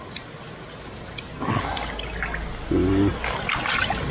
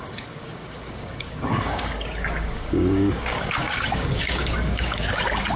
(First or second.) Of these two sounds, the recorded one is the first